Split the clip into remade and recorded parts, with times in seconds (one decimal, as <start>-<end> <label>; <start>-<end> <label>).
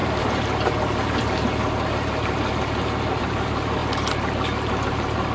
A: 0.0-5.3 recorded